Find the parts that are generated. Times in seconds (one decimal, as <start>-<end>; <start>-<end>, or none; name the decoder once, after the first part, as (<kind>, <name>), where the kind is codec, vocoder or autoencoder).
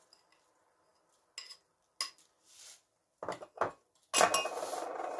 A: none